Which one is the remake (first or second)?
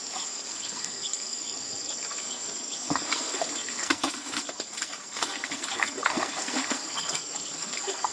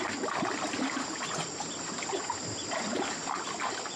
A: first